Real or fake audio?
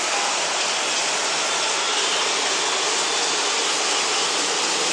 real